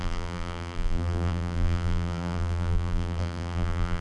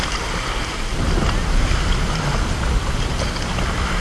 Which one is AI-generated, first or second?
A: first